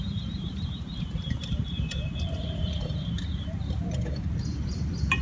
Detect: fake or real fake